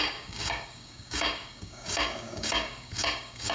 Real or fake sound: fake